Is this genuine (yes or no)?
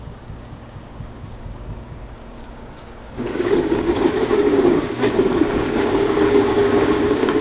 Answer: no